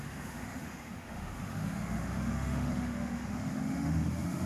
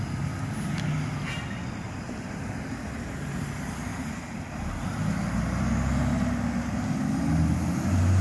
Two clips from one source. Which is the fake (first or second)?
first